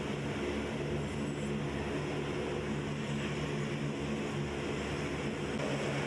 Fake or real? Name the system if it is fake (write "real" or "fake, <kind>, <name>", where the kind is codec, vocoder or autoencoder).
real